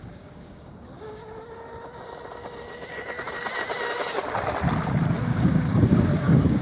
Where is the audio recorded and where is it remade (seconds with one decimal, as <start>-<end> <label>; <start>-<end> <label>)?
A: 0.0-1.2 remade; 1.2-5.2 recorded; 5.2-6.6 remade